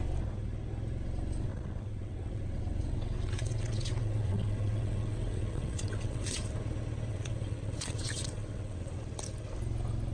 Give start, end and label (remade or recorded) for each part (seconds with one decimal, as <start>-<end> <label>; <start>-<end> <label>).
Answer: 0.0-1.5 recorded; 1.5-6.4 remade; 6.4-7.1 recorded; 7.1-9.0 remade; 9.0-10.1 recorded